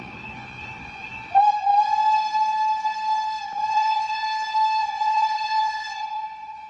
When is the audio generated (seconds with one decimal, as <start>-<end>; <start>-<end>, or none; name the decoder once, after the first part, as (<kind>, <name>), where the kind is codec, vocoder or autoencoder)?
0.0-1.0 (vocoder, Vocos); 3.7-4.2; 4.8-6.7